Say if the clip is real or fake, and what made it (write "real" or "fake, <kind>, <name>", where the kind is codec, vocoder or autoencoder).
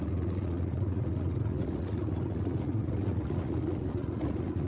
fake, vocoder, Vocos